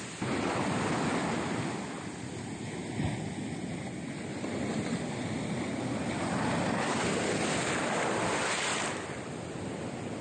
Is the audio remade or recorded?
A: recorded